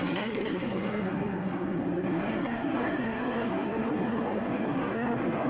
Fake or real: fake